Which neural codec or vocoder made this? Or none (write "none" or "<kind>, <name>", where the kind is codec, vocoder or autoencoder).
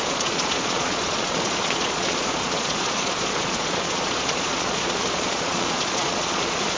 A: vocoder, Vocos